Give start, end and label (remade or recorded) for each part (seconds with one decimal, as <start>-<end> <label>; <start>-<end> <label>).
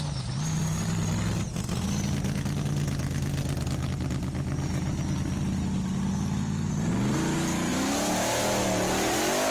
0.0-6.1 recorded; 6.1-6.7 remade; 6.7-9.5 recorded